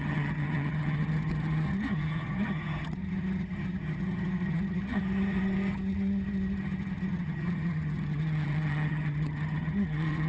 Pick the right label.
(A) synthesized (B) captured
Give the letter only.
A